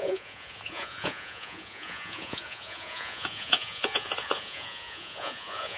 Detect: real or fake fake